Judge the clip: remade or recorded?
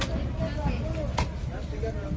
recorded